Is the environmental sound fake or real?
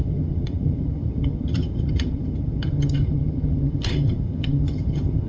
fake